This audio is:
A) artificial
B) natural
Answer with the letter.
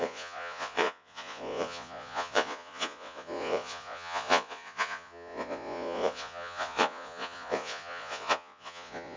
A